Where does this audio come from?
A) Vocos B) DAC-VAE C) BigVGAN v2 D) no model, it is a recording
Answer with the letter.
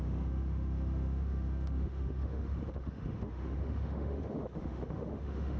B